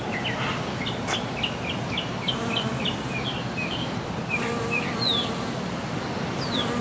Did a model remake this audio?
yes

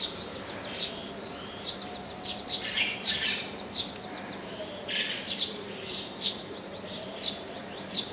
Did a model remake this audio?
yes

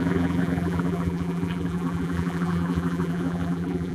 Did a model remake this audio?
yes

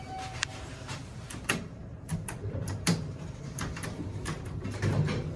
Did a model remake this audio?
yes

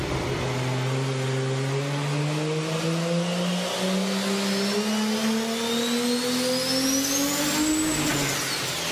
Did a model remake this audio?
no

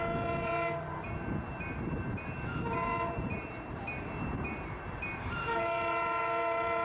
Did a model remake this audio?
yes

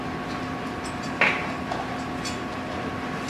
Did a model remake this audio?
no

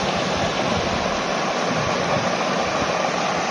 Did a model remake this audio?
no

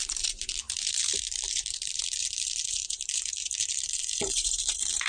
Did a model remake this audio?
yes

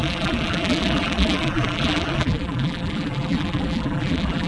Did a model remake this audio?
yes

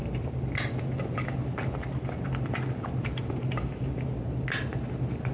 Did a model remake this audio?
no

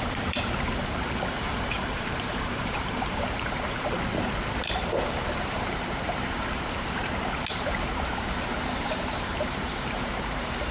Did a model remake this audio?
yes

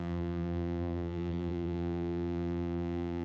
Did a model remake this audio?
yes